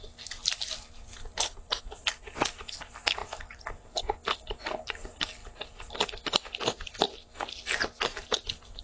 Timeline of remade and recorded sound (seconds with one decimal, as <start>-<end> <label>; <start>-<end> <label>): 0.0-8.8 recorded